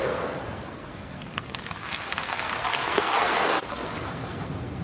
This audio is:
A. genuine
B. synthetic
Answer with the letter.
B